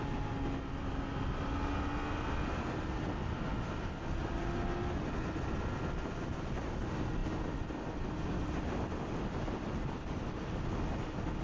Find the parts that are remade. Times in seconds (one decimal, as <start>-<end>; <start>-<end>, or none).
none